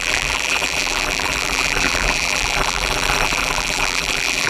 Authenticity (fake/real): fake